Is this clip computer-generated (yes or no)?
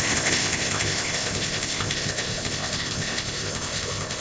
yes